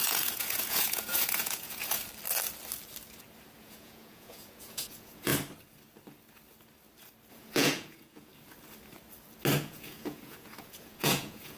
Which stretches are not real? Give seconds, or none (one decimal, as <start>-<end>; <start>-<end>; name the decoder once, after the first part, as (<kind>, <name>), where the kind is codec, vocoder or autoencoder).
0.0-2.0 (vocoder, Vocos); 3.6-5.3; 7.3-8.3; 9.6-11.6